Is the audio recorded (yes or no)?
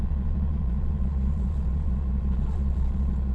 no